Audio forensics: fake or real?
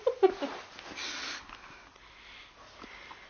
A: real